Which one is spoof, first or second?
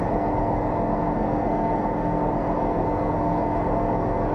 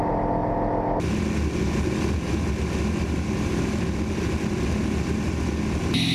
first